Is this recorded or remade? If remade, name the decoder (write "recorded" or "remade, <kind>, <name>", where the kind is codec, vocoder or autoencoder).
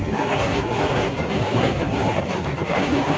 remade, codec, SNAC